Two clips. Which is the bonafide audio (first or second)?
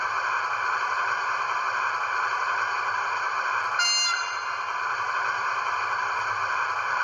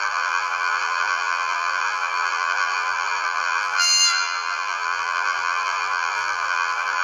first